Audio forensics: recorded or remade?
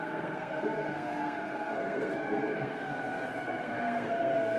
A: remade